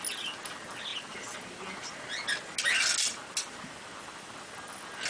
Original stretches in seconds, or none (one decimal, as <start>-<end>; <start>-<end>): 0.0-5.1